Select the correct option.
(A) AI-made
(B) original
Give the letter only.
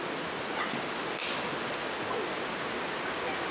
B